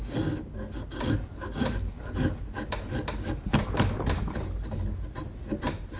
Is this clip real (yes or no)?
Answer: yes